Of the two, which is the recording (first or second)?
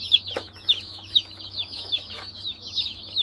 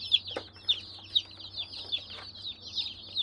second